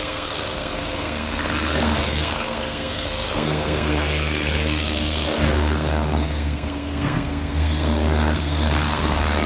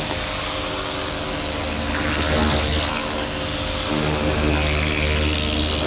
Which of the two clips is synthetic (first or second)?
first